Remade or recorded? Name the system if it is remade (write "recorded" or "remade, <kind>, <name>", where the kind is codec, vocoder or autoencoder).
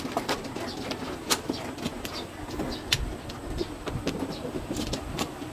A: recorded